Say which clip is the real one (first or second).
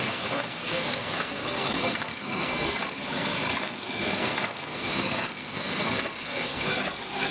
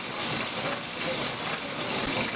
second